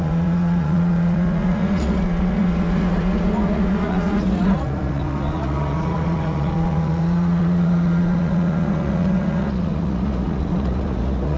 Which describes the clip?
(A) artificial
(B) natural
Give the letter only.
A